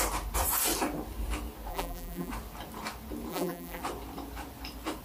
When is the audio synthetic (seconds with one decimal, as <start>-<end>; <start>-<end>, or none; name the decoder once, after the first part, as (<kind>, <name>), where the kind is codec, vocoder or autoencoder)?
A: 1.7-2.3 (vocoder, BigVGAN v2); 3.3-3.8